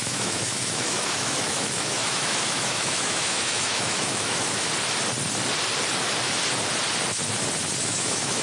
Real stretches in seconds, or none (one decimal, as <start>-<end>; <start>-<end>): 4.7-7.8